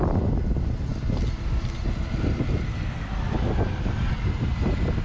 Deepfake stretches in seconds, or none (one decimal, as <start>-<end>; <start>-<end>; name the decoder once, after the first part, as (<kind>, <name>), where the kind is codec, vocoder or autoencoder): none